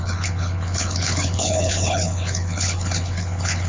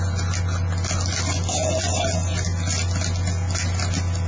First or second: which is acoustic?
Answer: second